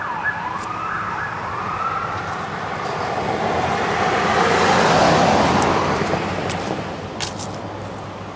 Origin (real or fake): fake